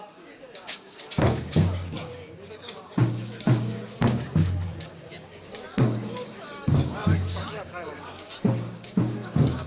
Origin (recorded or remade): remade